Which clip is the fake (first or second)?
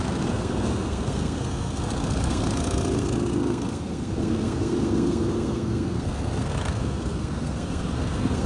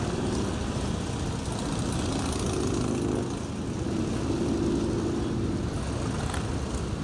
first